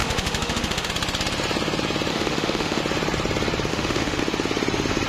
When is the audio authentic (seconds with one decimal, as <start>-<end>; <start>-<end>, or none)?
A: 0.9-2.1; 2.8-3.7; 4.2-5.1